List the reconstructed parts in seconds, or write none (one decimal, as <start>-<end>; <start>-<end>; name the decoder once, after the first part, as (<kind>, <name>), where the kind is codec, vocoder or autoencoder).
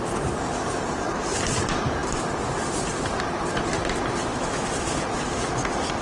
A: 4.3-5.0 (autoencoder, DAC-VAE)